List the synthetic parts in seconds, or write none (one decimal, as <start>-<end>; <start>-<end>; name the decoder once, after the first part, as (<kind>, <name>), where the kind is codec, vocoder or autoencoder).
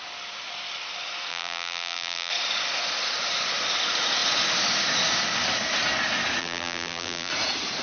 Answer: 1.3-2.3 (vocoder, BigVGAN v2); 6.4-7.3